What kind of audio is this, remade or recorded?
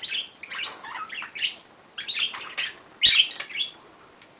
recorded